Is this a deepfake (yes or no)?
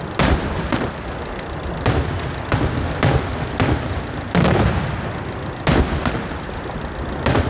no